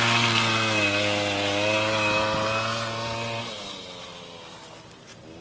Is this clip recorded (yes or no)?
yes